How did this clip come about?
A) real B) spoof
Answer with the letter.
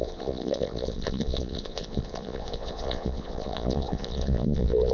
B